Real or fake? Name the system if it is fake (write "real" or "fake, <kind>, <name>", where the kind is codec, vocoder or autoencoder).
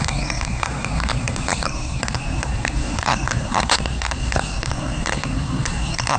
fake, codec, SNAC